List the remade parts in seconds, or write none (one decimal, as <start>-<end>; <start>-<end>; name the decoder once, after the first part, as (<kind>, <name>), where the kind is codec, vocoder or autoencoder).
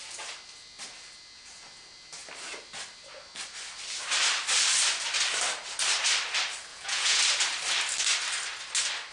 6.7-7.2 (vocoder, Vocos)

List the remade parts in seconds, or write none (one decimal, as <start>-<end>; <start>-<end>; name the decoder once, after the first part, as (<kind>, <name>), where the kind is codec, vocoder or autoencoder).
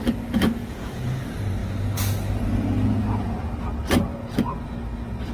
0.6-1.2 (vocoder, Vocos)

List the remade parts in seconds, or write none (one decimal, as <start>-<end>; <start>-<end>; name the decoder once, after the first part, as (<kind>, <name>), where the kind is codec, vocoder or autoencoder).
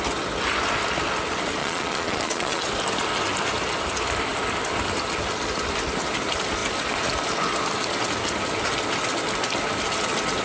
1.6-2.6 (vocoder, Vocos)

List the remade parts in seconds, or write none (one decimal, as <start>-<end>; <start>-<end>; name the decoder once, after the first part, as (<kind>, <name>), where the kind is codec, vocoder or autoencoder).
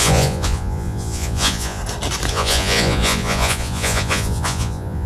0.0-1.8 (vocoder, Vocos); 2.3-5.1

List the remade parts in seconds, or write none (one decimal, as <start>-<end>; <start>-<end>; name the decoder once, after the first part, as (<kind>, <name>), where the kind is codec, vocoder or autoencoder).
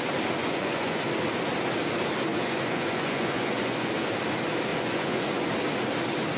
0.4-1.0 (vocoder, Vocos); 2.3-3.9; 4.7-5.5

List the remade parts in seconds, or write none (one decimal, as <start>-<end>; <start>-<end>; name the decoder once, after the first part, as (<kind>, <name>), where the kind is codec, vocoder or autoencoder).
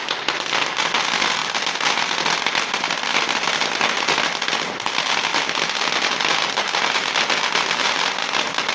none